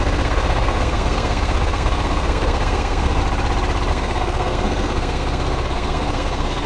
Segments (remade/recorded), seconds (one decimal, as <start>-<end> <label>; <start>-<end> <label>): 0.0-3.2 remade; 3.2-3.9 recorded; 3.9-6.7 remade